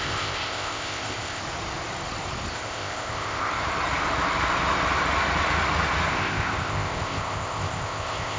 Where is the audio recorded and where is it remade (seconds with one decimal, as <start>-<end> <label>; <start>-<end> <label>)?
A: 0.0-1.4 remade; 1.4-2.5 recorded; 2.5-3.5 remade; 3.5-6.1 recorded; 6.1-8.4 remade